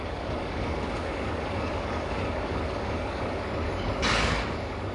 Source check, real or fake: fake